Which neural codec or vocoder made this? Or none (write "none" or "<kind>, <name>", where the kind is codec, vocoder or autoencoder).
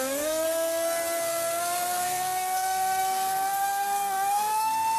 codec, SNAC